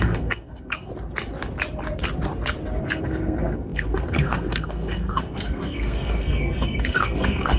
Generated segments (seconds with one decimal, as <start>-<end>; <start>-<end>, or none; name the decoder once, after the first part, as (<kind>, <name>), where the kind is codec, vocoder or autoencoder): 0.0-0.9 (codec, SNAC); 2.8-7.6

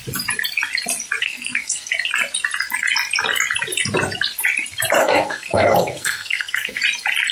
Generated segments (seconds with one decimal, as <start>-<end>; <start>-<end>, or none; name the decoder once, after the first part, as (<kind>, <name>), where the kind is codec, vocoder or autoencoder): 1.2-1.9 (codec, SNAC); 5.0-6.8

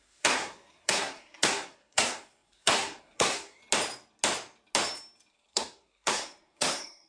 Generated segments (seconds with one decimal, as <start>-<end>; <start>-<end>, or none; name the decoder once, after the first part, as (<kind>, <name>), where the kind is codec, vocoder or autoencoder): 0.0-3.6 (codec, SNAC); 5.3-7.1

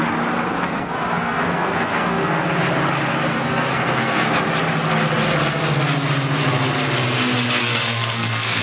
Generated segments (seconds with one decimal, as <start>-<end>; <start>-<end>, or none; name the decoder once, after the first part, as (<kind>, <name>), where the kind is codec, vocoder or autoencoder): 0.6-2.4 (codec, SNAC); 3.3-4.3; 7.6-8.6